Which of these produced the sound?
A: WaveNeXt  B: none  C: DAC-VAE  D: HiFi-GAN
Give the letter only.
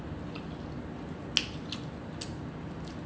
B